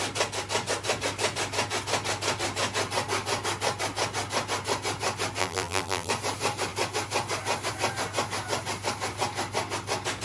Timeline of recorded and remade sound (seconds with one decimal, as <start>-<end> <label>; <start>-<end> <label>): 0.0-5.4 recorded; 5.4-6.1 remade; 6.1-10.2 recorded